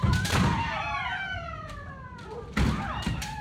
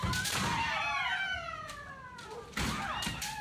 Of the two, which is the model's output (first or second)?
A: first